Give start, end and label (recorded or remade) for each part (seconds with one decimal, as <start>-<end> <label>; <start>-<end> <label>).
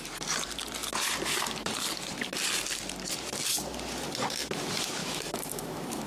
0.0-5.0 recorded; 5.0-6.1 remade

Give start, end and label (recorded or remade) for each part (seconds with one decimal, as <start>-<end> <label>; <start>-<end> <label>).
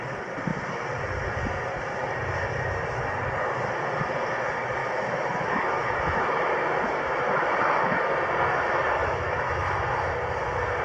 0.0-4.8 recorded; 4.8-8.1 remade; 8.1-9.0 recorded; 9.0-9.9 remade; 9.9-10.8 recorded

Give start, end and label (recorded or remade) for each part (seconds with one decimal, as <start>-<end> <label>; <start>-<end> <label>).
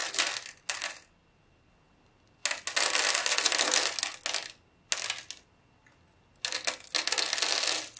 0.0-8.0 recorded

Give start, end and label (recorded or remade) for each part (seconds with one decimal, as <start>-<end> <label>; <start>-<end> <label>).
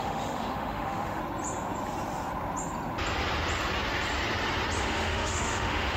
0.0-1.2 remade; 1.2-4.8 recorded; 4.8-6.0 remade